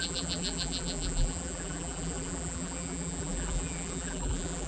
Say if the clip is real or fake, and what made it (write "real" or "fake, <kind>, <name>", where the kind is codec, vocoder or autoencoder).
fake, vocoder, BigVGAN v2